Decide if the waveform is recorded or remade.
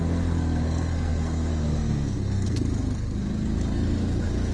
remade